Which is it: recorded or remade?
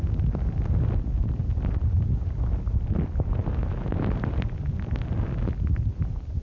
recorded